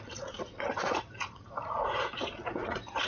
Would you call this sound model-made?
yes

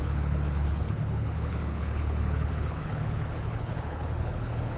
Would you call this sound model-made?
yes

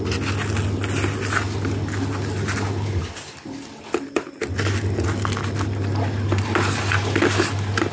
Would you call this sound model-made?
no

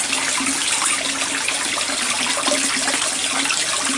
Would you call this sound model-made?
no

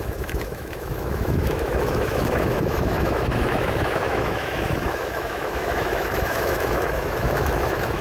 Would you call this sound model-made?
yes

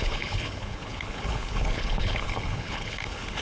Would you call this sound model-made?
yes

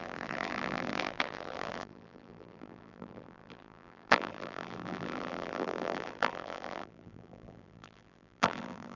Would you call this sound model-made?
yes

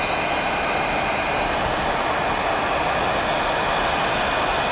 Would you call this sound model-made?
no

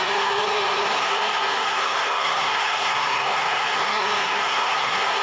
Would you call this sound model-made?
yes